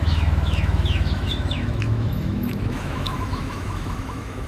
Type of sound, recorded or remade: remade